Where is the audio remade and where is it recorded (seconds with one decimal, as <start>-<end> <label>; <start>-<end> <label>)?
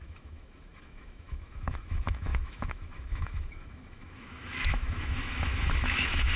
0.0-6.4 remade